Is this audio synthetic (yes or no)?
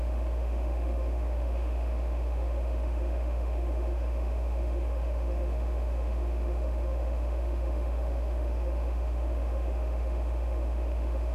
yes